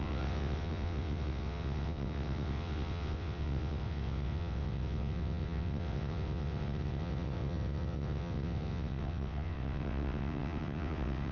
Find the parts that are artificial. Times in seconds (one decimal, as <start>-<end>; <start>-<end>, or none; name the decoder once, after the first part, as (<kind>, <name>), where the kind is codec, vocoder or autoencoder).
0.0-11.3 (vocoder, WaveNeXt)